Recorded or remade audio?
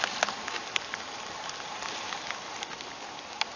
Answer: recorded